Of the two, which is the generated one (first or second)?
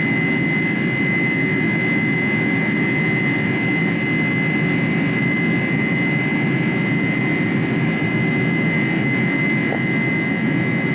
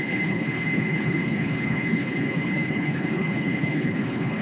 second